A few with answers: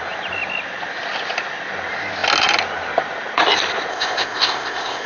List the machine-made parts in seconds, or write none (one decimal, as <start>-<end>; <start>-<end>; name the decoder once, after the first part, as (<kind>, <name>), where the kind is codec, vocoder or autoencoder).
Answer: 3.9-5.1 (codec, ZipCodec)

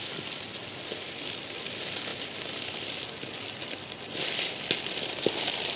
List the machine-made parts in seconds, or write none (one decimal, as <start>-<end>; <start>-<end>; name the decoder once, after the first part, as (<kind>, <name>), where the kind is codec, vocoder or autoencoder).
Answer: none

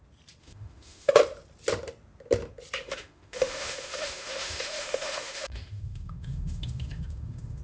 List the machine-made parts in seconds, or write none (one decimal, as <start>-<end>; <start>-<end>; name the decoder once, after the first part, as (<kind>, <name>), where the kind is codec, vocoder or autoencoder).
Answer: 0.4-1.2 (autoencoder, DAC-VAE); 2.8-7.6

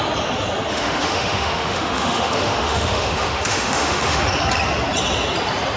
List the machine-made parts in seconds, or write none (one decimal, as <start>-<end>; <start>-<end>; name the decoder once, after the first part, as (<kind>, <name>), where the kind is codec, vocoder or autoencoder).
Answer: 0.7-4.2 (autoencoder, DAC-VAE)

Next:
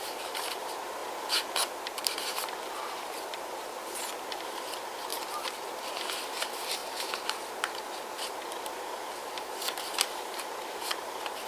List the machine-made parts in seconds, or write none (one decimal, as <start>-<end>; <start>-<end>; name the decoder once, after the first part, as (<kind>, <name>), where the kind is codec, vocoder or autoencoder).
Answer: 0.0-1.0 (vocoder, BigVGAN v2); 1.6-5.1; 6.1-6.8; 8.8-11.5

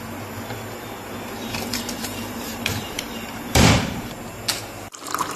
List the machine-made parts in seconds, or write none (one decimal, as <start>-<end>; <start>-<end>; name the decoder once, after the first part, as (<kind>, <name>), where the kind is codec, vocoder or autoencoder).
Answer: 1.5-4.6 (vocoder, BigVGAN v2)